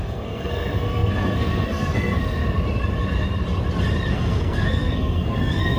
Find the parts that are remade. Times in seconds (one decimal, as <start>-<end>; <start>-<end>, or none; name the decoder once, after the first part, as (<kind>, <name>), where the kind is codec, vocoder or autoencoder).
0.0-2.4 (codec, SNAC); 4.1-5.8